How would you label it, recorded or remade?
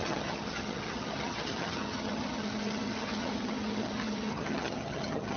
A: remade